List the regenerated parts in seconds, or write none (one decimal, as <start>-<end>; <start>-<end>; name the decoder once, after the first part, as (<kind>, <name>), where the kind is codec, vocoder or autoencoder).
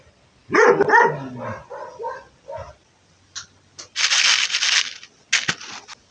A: none